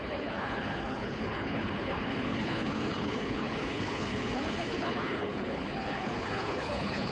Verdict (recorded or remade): remade